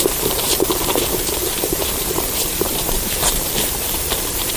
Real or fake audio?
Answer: fake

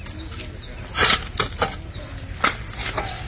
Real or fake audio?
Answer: real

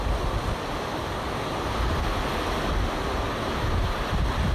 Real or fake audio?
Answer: real